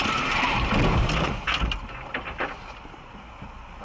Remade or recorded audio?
recorded